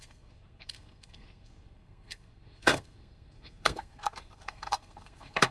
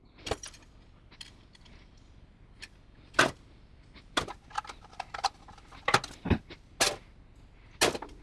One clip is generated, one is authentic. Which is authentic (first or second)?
second